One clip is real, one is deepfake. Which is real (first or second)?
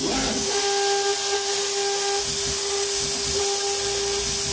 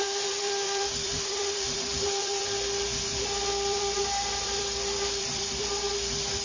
first